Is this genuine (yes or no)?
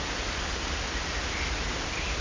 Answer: yes